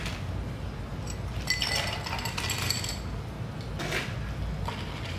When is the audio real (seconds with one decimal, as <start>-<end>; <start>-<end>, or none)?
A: 0.0-5.2